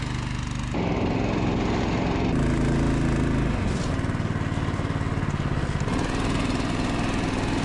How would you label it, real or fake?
real